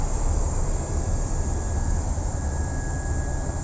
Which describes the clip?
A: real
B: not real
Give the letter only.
A